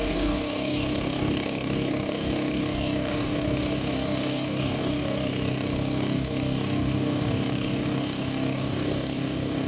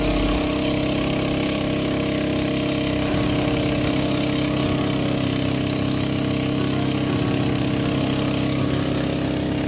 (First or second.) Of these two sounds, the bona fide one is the second